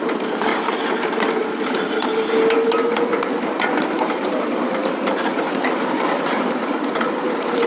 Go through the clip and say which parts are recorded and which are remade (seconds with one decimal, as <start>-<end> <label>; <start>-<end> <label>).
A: 0.0-0.5 remade; 0.5-3.8 recorded; 3.8-7.7 remade